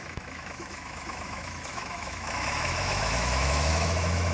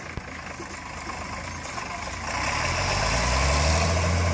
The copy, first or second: first